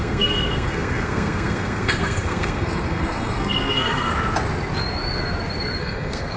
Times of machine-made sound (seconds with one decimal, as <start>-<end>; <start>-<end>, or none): 0.0-4.1; 5.8-6.4